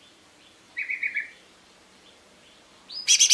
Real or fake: fake